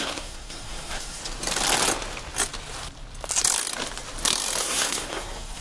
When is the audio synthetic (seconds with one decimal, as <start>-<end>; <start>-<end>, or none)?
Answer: 0.0-1.2; 4.6-5.6